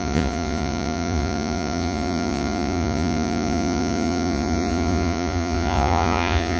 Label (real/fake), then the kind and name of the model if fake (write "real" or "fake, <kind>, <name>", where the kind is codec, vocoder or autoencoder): fake, vocoder, Vocos